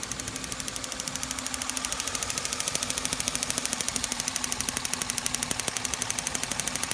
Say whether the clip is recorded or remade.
recorded